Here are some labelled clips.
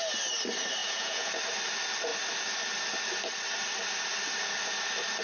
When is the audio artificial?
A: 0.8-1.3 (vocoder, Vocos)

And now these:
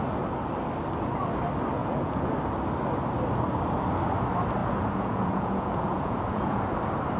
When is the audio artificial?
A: 1.8-2.3 (vocoder, Vocos); 4.6-6.6

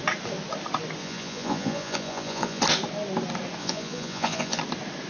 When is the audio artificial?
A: 1.0-2.6 (vocoder, Vocos); 3.6-4.6

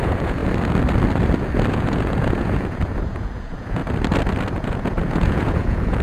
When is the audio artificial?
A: 0.0-0.4 (vocoder, Vocos); 1.7-3.8; 4.5-6.0

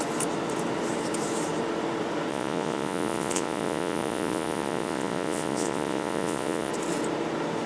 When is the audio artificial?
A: 2.3-6.7 (vocoder, Vocos)

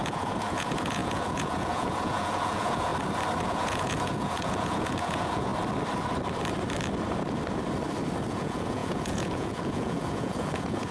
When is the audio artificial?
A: 0.0-2.9 (vocoder, Vocos); 3.4-5.5; 8.3-10.9